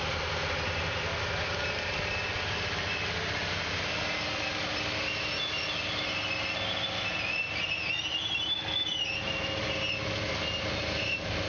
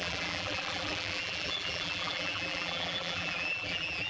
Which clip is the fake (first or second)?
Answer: second